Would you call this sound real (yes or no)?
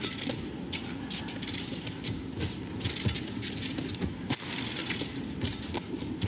yes